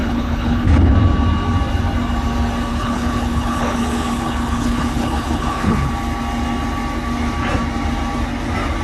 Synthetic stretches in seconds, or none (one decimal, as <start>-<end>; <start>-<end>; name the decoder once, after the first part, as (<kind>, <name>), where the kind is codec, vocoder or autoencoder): 0.0-0.9 (codec, HILCodec); 2.7-5.9